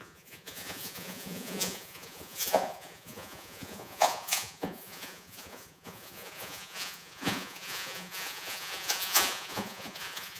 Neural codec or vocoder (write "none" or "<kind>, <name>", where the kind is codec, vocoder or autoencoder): vocoder, Vocos